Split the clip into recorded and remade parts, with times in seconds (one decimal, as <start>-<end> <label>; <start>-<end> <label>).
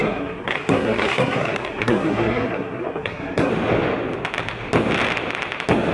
0.0-3.5 remade; 3.5-5.9 recorded